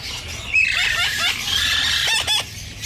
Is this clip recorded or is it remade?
recorded